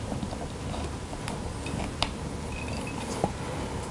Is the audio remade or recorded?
recorded